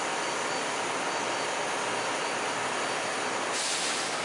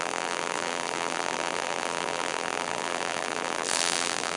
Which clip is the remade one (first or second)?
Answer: second